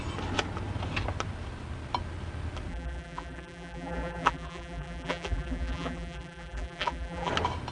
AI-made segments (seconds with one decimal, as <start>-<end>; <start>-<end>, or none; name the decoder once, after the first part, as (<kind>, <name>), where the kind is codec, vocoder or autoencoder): 2.7-7.3 (vocoder, BigVGAN v2)